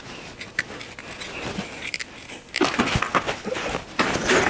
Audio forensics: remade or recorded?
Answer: recorded